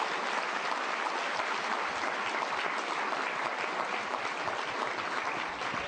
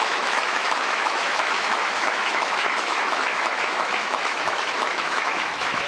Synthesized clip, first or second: second